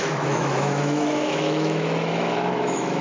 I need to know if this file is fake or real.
fake